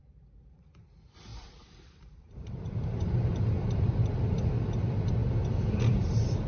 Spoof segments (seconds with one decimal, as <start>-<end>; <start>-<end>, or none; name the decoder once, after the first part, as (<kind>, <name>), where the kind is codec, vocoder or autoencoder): 1.3-4.3 (vocoder, BigVGAN v2)